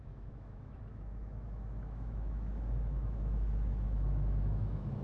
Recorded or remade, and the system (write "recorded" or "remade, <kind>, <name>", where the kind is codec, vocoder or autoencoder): remade, autoencoder, DAC-VAE